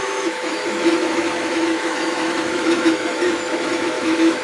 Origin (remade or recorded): remade